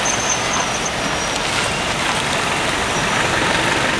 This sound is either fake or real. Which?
real